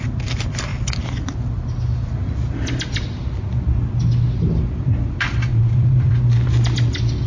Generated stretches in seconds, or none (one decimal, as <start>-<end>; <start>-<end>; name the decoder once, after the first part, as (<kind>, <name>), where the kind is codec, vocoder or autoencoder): 5.5-6.1 (vocoder, Vocos)